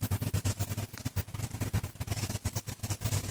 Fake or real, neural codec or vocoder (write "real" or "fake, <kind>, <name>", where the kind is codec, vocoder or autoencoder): real